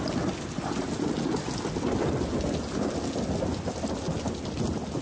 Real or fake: real